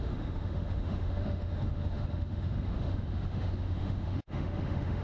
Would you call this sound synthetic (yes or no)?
yes